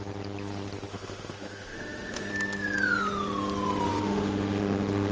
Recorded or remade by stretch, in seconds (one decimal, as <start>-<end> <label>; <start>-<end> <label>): 0.0-0.9 recorded; 0.9-2.3 remade; 2.3-3.9 recorded; 3.9-5.1 remade